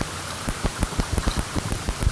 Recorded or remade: remade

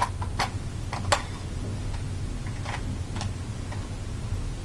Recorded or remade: recorded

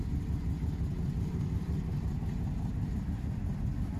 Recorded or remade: recorded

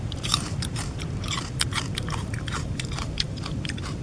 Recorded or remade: remade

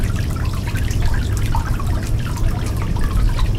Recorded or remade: recorded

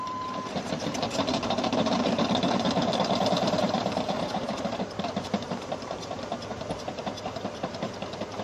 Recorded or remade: remade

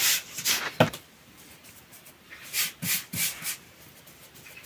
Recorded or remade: recorded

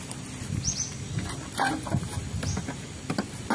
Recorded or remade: recorded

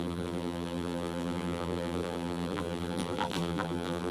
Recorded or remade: remade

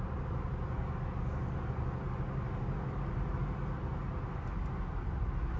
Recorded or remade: recorded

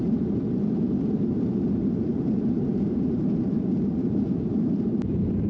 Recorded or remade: remade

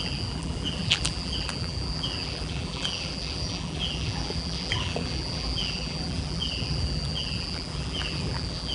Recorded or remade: remade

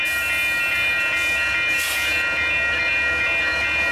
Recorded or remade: recorded